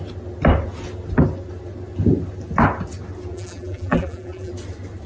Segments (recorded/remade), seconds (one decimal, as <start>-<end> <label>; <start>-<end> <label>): 0.0-3.3 recorded; 3.3-4.5 remade; 4.5-5.1 recorded